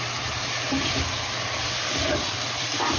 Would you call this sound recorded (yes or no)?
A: yes